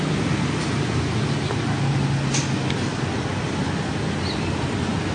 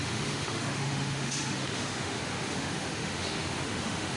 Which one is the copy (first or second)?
second